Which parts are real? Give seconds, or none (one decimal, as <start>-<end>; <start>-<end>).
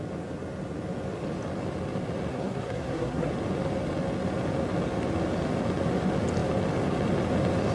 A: 0.0-2.3; 3.3-7.7